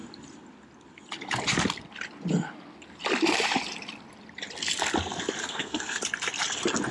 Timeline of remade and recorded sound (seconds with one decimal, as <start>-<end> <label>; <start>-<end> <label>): 0.0-5.4 recorded; 5.4-6.0 remade; 6.0-6.9 recorded